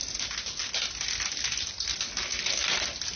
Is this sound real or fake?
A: real